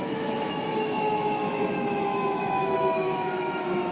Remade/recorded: remade